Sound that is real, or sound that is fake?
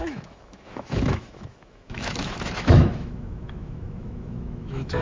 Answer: fake